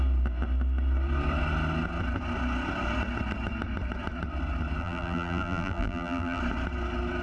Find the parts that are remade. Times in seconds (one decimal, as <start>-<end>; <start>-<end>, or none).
4.8-6.4